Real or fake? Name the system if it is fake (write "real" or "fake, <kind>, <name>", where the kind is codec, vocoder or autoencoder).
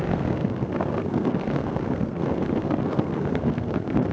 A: fake, codec, SNAC